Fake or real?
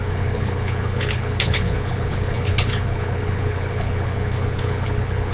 fake